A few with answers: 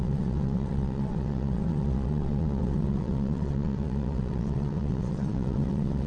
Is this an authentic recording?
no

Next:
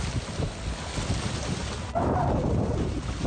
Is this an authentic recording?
yes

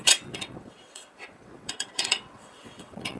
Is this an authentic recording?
no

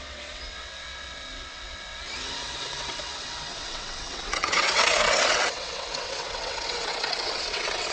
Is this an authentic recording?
no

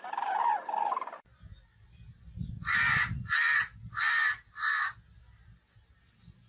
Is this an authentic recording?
yes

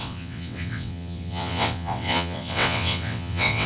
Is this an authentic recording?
no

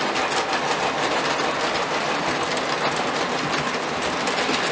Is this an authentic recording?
yes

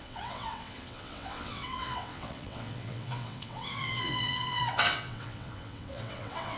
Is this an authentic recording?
no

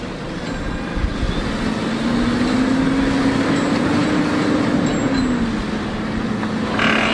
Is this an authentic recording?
yes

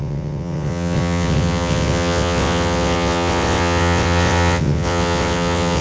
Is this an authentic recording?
no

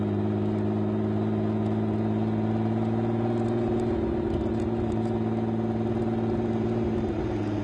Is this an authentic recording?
yes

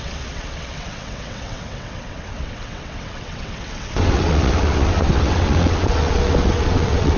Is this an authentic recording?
no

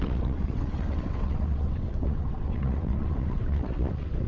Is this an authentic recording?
no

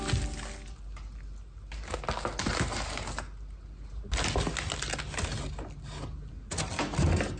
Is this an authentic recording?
yes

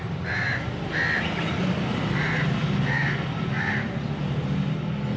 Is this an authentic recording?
yes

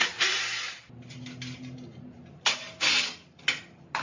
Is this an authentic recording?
yes